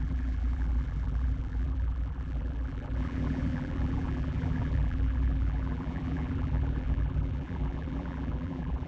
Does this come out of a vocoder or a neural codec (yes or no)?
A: yes